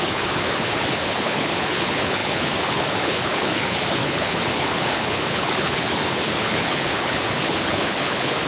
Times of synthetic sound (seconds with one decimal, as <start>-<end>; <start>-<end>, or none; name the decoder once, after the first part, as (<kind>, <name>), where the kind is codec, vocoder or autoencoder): 0.0-8.5 (codec, HILCodec)